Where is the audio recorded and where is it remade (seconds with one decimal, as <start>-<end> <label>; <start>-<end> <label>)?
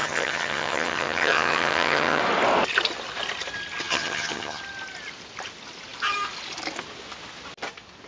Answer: 0.0-2.2 remade; 2.2-3.8 recorded; 3.8-4.6 remade; 4.6-8.1 recorded